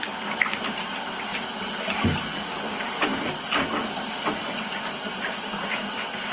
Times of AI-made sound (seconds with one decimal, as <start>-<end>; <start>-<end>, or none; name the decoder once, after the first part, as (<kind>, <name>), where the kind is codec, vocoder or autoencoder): none